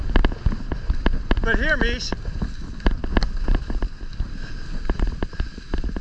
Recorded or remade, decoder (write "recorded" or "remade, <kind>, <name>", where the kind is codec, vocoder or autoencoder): recorded